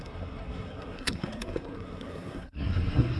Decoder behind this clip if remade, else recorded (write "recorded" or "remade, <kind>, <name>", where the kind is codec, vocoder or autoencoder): remade, codec, SNAC